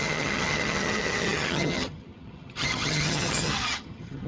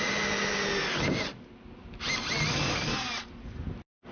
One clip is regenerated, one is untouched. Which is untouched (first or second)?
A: second